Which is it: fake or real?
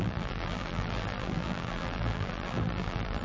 fake